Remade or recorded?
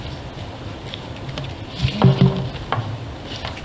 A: recorded